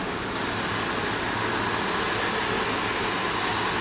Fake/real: real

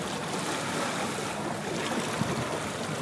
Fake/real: real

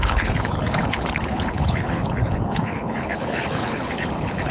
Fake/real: fake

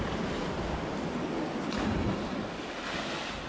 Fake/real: real